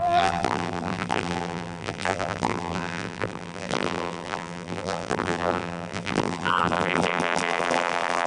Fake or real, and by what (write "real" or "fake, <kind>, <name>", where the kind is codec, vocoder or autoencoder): fake, vocoder, BigVGAN v2